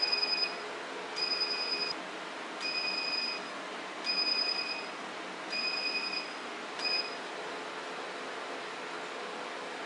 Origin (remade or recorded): recorded